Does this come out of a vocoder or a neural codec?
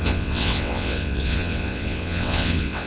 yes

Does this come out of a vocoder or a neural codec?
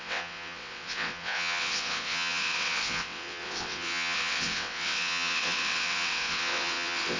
yes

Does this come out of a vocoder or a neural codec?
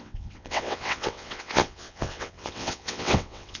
yes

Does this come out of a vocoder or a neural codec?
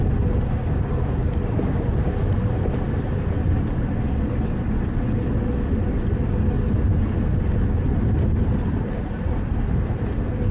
no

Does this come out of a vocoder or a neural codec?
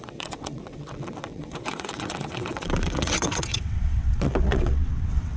yes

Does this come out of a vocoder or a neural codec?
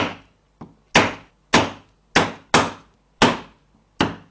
no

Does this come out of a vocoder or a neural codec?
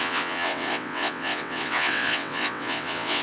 yes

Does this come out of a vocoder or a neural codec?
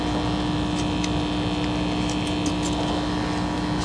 no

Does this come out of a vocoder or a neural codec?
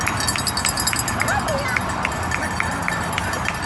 no